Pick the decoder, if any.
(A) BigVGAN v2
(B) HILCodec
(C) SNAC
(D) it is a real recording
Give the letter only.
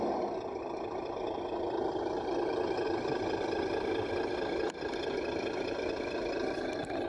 D